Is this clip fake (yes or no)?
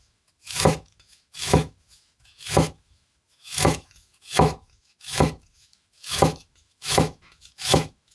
yes